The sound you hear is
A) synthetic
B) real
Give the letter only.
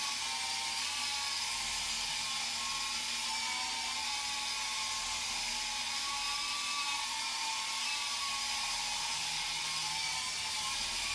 B